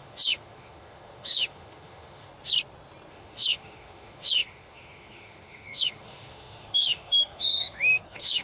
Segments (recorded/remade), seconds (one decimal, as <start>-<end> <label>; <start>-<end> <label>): 0.0-2.3 remade; 2.3-3.1 recorded; 3.1-8.4 remade